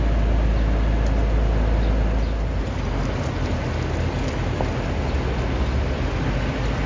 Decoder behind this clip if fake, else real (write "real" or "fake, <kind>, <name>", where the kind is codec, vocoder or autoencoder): real